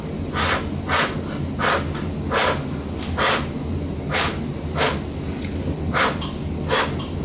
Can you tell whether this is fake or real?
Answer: real